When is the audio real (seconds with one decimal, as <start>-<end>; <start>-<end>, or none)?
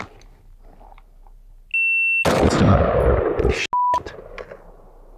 0.0-5.2